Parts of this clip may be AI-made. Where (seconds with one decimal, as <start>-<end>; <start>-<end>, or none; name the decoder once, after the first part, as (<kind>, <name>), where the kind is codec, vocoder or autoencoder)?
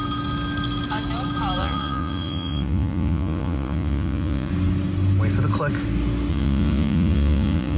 1.6-4.5 (vocoder, Vocos); 6.3-7.8